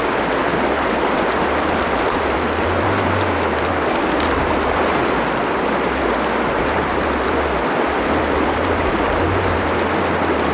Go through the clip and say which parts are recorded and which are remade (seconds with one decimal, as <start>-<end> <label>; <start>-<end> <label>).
0.0-10.5 recorded